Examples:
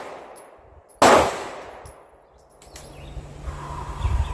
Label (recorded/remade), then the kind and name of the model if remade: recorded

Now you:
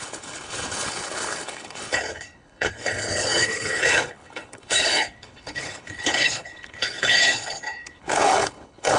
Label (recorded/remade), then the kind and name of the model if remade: remade, codec, HILCodec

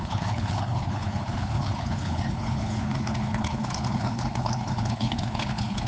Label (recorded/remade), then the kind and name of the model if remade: remade, codec, HILCodec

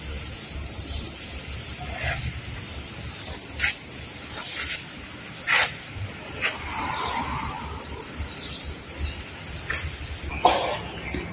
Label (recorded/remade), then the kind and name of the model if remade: recorded